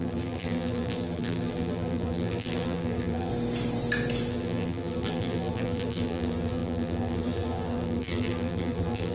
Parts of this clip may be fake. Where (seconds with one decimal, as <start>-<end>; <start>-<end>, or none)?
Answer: 0.0-3.3; 4.3-9.1